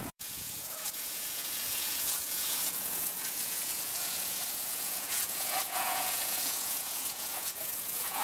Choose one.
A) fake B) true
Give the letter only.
A